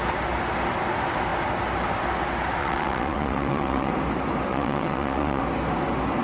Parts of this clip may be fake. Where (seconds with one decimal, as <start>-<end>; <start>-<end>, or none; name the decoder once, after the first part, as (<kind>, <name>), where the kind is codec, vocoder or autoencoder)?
2.6-3.9 (vocoder, WaveNeXt); 4.5-5.4